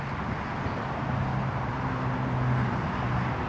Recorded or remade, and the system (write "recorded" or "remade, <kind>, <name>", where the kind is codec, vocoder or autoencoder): recorded